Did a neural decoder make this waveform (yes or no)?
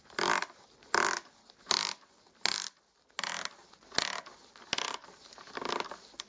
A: no